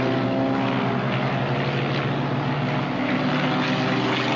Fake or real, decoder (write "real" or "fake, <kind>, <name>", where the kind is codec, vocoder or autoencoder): real